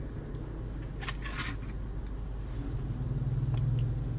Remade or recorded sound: recorded